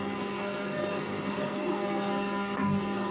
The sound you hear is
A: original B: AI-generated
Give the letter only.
B